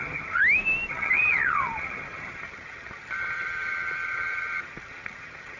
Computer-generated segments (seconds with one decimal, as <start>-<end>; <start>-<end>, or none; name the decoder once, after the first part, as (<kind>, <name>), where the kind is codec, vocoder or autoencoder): 0.0-0.4 (vocoder, HiFi-GAN); 0.9-5.6